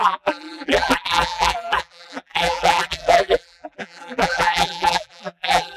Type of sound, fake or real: fake